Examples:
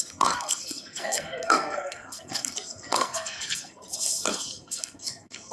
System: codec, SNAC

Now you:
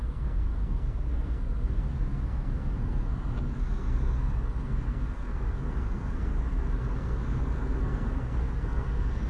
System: codec, SNAC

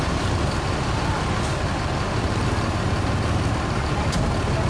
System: none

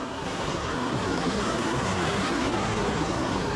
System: codec, SNAC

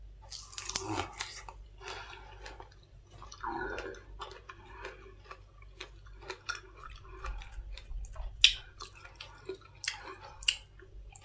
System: none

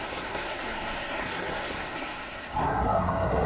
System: codec, SNAC